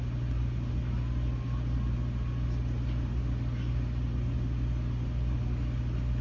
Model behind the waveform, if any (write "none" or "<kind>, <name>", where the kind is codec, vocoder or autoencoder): none